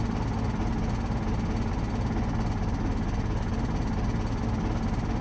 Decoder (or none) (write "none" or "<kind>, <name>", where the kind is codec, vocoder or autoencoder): none